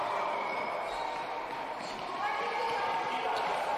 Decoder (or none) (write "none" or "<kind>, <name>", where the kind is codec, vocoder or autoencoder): none